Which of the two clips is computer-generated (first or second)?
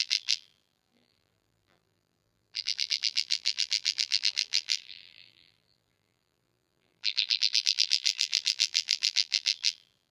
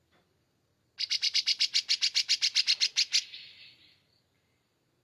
first